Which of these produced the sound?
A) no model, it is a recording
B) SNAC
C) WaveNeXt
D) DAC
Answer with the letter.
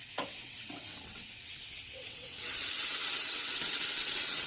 C